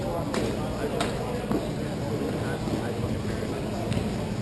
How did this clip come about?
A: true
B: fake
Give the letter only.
A